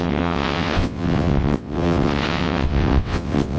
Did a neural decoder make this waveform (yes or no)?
yes